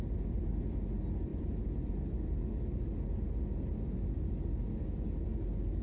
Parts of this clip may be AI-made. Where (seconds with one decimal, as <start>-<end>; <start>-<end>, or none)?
1.3-1.9